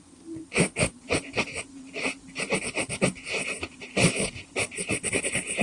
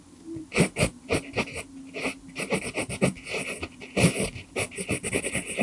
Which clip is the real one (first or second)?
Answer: second